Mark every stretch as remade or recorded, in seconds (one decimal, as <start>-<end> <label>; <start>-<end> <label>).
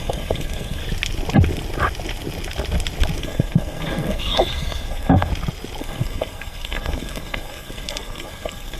0.0-0.8 remade; 0.8-3.2 recorded; 3.2-5.3 remade; 5.3-5.8 recorded; 5.8-8.8 remade